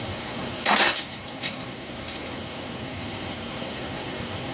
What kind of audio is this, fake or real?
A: fake